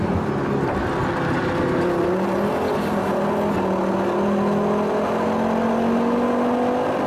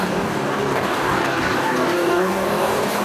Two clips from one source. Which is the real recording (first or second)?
first